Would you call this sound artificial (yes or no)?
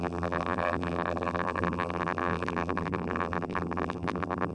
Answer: yes